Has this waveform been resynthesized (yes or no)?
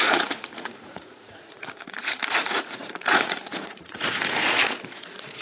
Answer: yes